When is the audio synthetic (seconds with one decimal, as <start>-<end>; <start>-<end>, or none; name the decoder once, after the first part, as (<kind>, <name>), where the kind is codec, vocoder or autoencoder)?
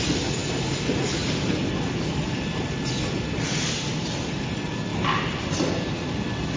none